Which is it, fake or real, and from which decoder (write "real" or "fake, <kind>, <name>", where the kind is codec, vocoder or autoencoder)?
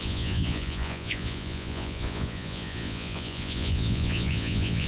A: fake, vocoder, Vocos